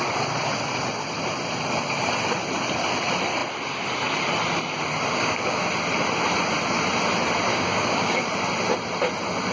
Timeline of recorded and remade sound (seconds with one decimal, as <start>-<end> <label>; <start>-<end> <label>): 0.0-5.1 recorded; 5.1-5.6 remade; 5.6-7.5 recorded; 7.5-8.3 remade; 8.3-9.5 recorded